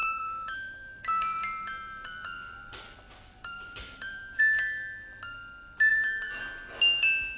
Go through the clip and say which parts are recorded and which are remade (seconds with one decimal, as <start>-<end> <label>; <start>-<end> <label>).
0.0-4.4 remade; 4.4-5.9 recorded; 5.9-6.4 remade; 6.4-7.4 recorded